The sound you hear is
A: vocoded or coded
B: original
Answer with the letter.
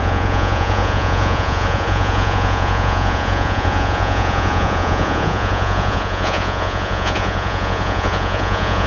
A